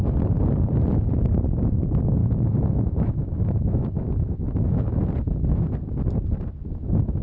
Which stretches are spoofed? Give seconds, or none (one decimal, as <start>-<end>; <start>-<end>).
2.2-5.0